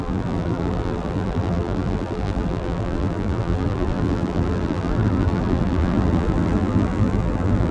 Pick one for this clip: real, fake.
fake